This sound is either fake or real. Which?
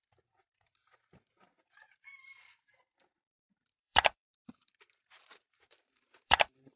fake